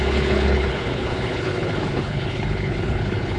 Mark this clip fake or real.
fake